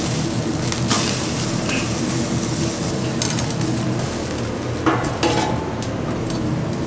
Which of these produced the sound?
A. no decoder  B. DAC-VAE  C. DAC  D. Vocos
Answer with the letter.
A